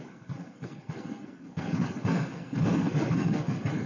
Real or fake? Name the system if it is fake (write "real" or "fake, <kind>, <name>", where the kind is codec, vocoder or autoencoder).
fake, codec, SNAC